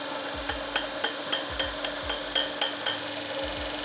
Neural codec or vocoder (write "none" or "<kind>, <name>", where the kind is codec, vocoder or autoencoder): none